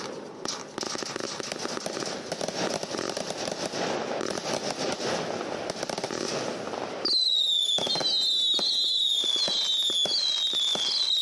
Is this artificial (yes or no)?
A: no